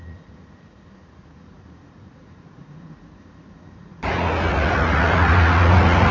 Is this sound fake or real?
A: fake